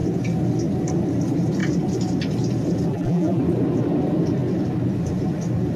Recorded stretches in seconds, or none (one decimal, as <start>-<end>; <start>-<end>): 0.0-2.9; 3.4-5.8